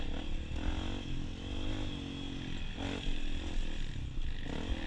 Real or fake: real